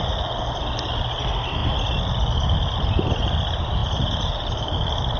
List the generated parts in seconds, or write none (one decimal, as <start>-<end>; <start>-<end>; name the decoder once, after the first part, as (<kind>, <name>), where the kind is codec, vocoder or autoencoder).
none